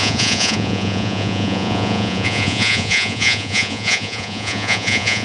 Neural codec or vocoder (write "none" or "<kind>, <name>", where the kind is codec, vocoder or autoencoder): vocoder, Vocos